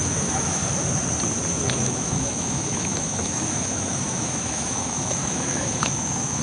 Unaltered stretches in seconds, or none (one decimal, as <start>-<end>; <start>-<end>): 0.6-1.5